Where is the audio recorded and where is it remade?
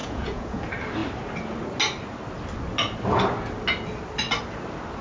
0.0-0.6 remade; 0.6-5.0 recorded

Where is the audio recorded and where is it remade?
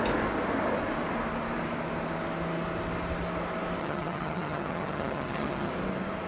0.0-3.8 recorded; 3.8-5.7 remade; 5.7-6.3 recorded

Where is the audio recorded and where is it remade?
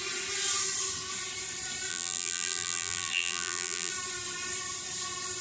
0.0-1.9 recorded; 1.9-3.9 remade; 3.9-5.4 recorded